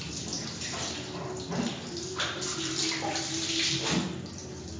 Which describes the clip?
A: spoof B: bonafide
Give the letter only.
B